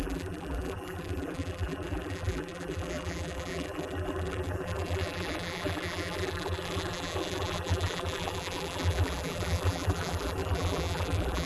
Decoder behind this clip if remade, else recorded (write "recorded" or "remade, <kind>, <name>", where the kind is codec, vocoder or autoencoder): remade, vocoder, BigVGAN v2